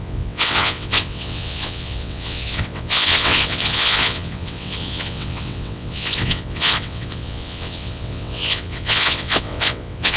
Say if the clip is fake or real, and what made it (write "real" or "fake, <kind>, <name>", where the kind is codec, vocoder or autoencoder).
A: fake, vocoder, WaveNeXt